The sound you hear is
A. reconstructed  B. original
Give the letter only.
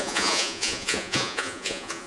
A